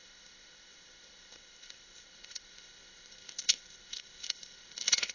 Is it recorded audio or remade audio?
remade